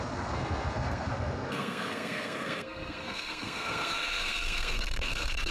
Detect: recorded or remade remade